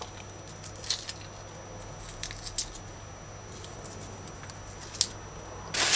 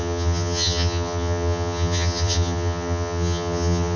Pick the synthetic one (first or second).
second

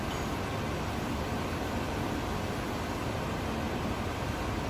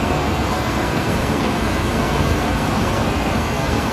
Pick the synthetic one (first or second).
second